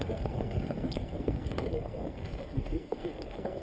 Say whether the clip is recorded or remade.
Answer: remade